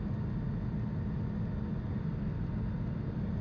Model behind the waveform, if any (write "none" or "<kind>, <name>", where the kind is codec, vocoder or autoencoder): none